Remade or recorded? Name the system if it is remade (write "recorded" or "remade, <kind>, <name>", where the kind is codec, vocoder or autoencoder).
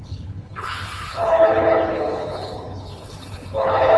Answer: remade, codec, HILCodec